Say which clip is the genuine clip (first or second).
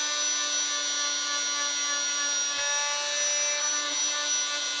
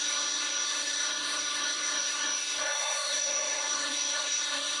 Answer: first